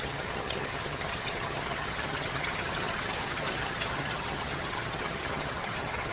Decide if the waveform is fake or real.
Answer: fake